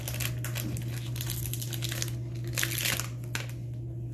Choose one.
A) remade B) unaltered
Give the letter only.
B